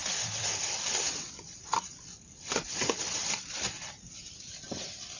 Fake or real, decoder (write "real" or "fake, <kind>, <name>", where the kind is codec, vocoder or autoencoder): real